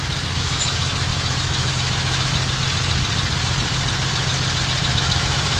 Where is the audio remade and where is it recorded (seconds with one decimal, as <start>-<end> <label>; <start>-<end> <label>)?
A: 0.0-2.3 remade; 2.3-4.9 recorded; 4.9-5.6 remade